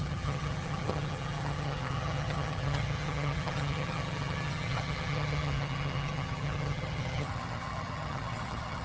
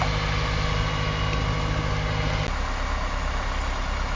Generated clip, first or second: first